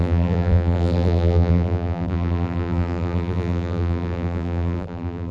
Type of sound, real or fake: fake